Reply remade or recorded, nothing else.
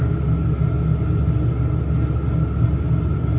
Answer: recorded